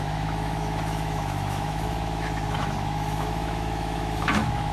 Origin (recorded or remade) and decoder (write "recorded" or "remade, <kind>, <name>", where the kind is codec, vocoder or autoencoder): remade, autoencoder, DAC-VAE